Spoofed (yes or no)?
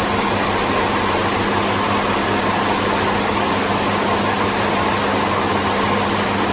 no